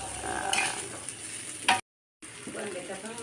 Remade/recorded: recorded